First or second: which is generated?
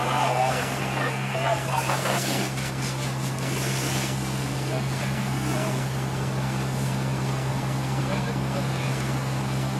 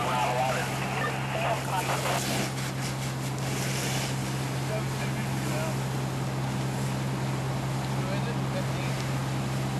first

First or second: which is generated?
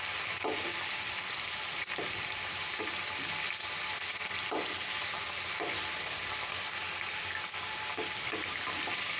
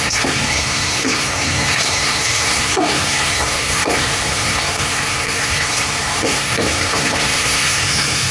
second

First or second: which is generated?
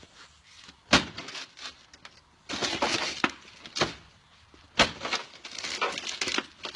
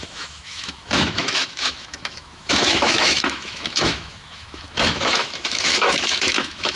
second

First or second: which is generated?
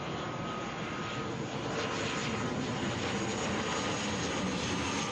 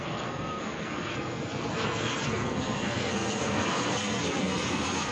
second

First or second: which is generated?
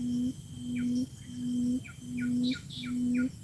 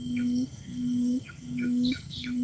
second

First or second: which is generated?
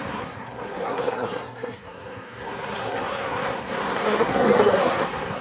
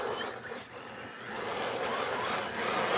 first